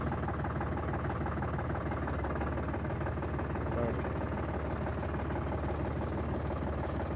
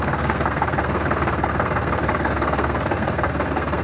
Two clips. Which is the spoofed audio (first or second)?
second